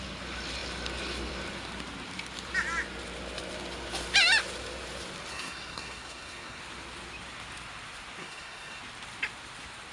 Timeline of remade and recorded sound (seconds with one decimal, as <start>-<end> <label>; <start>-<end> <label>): 0.0-5.3 recorded; 5.3-6.6 remade; 6.6-8.2 recorded; 8.2-8.8 remade; 8.8-9.9 recorded